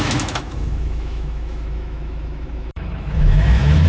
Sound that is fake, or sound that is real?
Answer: fake